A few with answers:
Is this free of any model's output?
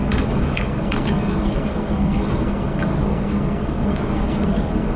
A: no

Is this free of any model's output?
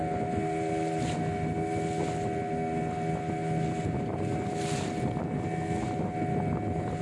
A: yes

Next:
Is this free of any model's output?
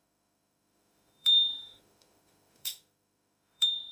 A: no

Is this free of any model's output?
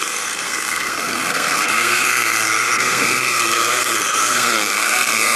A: no